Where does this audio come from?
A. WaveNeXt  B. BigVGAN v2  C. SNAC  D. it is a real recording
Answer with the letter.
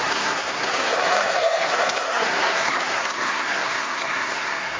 C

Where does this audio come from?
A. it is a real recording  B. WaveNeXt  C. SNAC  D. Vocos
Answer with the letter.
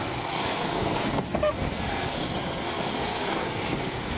C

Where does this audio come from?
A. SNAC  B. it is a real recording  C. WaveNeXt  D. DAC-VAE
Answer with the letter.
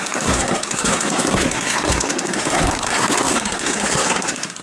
A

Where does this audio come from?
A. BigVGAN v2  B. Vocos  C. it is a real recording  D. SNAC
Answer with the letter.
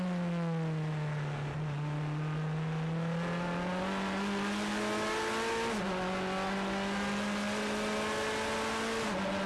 C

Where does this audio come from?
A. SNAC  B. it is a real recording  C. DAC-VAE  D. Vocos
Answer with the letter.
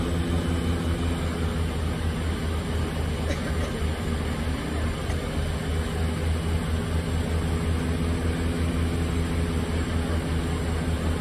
B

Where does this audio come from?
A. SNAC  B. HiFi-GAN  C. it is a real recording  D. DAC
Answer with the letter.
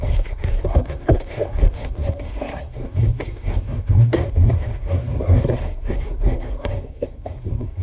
A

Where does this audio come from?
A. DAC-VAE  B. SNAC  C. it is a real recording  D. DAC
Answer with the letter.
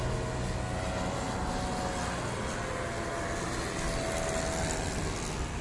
C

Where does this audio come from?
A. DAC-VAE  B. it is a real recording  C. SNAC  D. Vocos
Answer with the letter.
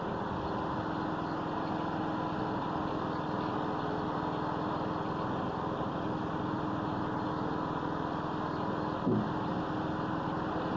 B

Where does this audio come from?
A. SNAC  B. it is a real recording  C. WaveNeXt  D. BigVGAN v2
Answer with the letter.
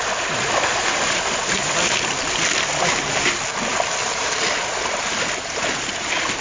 B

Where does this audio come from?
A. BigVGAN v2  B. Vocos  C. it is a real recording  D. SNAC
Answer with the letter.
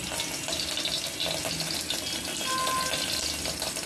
C